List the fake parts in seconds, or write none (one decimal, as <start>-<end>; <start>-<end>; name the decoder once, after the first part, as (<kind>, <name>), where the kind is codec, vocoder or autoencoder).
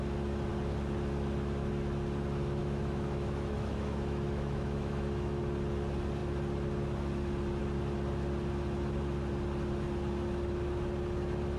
2.6-5.4 (autoencoder, DAC-VAE)